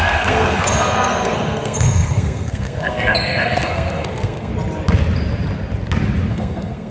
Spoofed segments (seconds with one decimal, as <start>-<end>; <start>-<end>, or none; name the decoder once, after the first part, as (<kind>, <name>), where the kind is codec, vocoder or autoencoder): 0.0-4.5 (codec, SNAC); 6.3-6.9